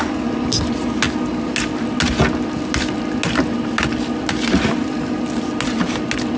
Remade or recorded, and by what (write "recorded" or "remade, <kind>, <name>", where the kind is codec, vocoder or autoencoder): recorded